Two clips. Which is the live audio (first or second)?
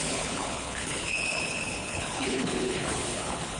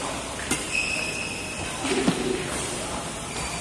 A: second